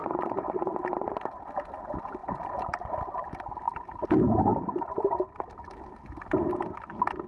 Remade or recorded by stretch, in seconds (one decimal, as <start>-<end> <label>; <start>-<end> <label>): 0.0-4.5 recorded; 4.5-6.2 remade; 6.2-7.3 recorded

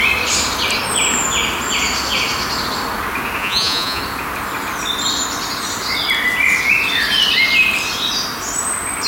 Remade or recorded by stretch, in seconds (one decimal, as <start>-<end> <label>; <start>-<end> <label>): 0.0-3.4 recorded; 3.4-4.0 remade; 4.0-9.1 recorded

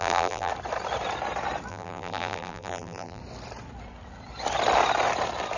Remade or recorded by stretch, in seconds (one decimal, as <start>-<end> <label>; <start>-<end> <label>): 0.0-0.5 remade; 0.5-1.7 recorded; 1.7-3.2 remade; 3.2-5.6 recorded

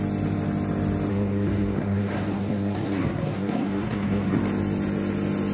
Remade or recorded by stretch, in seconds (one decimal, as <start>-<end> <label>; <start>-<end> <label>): 0.0-1.1 recorded; 1.1-4.4 remade; 4.4-5.5 recorded

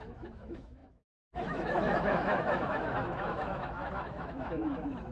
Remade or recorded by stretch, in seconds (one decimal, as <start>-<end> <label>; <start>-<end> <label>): 0.0-5.1 remade